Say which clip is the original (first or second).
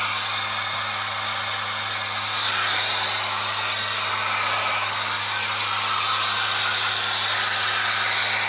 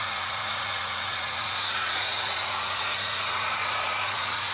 first